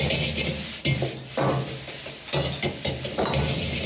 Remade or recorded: recorded